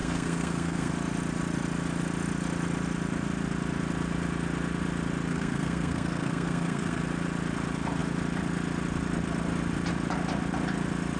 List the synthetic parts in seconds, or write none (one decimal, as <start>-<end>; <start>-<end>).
0.0-0.9; 5.3-7.0